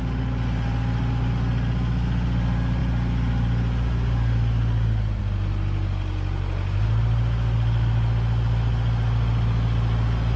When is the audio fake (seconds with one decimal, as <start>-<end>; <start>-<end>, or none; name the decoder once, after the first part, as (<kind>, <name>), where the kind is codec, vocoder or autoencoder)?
none